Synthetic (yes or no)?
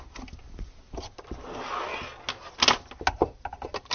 no